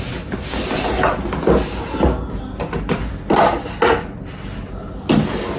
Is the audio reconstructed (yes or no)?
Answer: no